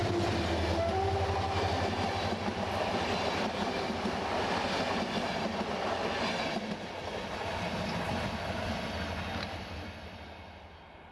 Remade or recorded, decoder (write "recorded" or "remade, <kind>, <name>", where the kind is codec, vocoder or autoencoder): recorded